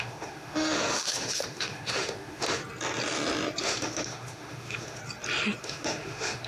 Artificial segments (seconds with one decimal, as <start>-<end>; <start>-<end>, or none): 0.0-2.6; 3.6-5.0; 5.6-6.5